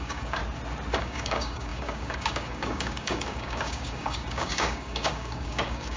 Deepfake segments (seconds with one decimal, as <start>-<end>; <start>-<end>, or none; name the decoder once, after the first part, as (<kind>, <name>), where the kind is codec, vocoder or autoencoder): 0.0-0.4 (codec, DAC); 1.0-6.0